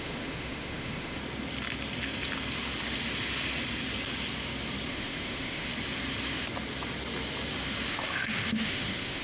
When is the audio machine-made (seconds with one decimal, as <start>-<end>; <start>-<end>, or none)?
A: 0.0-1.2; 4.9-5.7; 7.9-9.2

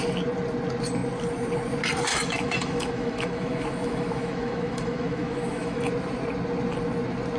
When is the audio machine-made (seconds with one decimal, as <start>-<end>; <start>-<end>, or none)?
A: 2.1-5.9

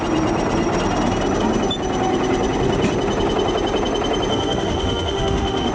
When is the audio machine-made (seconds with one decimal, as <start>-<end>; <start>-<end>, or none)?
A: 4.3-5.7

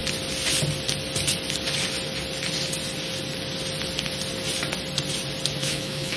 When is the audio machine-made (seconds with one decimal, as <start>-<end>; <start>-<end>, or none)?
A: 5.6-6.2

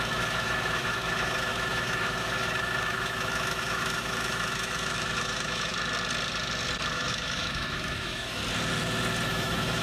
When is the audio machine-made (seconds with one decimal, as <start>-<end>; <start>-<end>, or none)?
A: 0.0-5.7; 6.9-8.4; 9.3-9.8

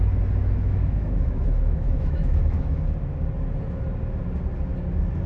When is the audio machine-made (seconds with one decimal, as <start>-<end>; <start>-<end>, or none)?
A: 0.4-2.8

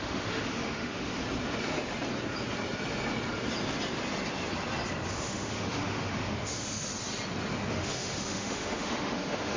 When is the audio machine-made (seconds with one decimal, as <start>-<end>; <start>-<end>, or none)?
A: 0.0-1.2; 5.1-6.9; 7.7-9.6